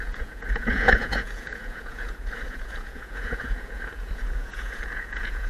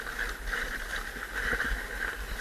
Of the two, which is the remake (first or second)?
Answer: first